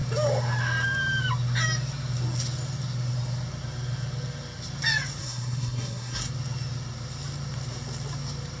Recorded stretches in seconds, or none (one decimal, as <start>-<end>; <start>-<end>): 0.0-5.2; 6.2-8.6